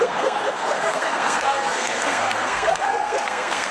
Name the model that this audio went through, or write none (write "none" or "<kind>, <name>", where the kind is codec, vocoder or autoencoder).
codec, SNAC